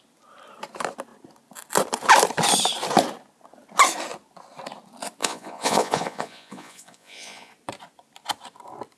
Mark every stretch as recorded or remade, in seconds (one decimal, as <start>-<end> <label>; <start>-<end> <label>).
0.0-5.2 recorded; 5.2-7.5 remade; 7.5-9.0 recorded